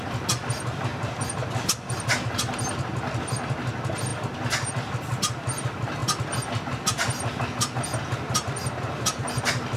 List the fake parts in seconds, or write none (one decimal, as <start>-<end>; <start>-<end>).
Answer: 0.9-1.5